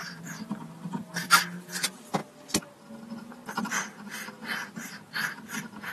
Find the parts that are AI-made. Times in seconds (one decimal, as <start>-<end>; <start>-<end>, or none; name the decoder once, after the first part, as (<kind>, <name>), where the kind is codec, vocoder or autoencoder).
0.0-0.6 (vocoder, BigVGAN v2)